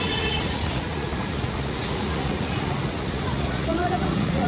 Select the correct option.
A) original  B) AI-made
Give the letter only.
B